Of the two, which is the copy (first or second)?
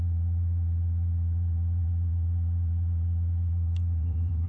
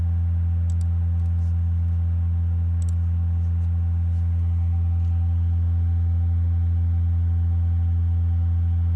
first